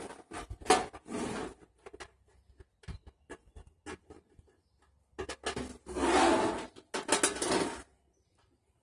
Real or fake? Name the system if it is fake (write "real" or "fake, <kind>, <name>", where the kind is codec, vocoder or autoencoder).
real